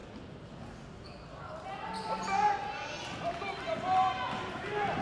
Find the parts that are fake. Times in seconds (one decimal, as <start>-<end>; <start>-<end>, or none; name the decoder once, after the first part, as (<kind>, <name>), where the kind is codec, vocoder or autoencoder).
none